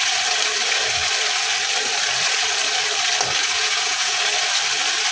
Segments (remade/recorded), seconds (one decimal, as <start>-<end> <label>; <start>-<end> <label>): 0.0-3.4 recorded; 3.4-4.2 remade; 4.2-5.1 recorded